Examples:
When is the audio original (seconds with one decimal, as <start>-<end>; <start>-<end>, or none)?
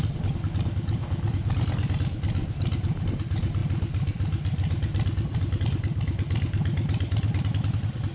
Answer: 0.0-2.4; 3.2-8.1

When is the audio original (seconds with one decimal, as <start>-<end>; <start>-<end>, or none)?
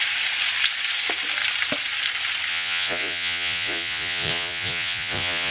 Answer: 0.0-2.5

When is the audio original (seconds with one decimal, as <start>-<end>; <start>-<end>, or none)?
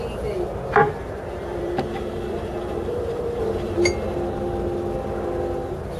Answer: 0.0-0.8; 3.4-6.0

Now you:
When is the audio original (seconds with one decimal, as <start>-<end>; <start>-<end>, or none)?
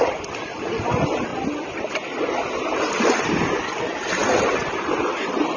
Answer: none